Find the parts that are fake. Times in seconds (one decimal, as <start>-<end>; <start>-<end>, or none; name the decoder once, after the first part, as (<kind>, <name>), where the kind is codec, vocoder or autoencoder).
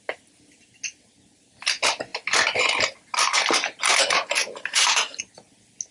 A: 4.4-5.2 (vocoder, BigVGAN v2)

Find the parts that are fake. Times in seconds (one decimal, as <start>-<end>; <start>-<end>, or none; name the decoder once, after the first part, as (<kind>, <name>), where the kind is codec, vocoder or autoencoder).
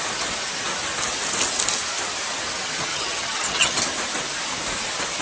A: 2.9-3.8 (vocoder, HiFi-GAN)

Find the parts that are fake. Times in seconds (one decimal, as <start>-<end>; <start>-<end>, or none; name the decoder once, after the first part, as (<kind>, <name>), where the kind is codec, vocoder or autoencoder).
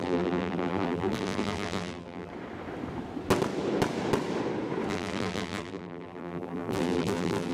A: 0.0-2.3 (vocoder, BigVGAN v2); 4.9-7.5